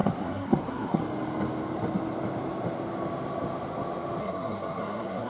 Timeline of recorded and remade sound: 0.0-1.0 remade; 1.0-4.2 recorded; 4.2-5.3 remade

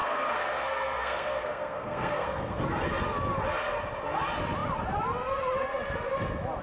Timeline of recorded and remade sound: 0.0-2.6 remade; 2.6-6.6 recorded

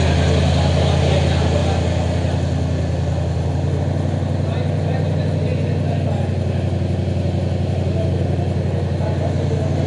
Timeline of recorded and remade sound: 0.0-9.9 recorded

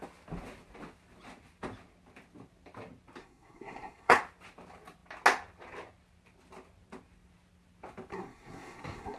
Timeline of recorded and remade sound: 0.0-3.2 recorded; 3.2-4.2 remade; 4.2-8.1 recorded; 8.1-9.2 remade

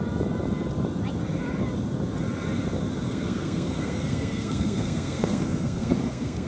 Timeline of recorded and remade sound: 0.0-3.0 recorded; 3.0-6.5 remade

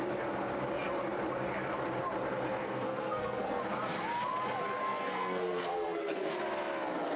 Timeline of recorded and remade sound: 0.0-2.6 recorded; 2.6-3.6 remade; 3.6-4.8 recorded; 4.8-6.4 remade; 6.4-7.2 recorded

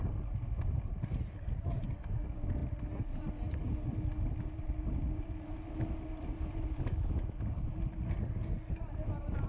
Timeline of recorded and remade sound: 0.0-9.5 recorded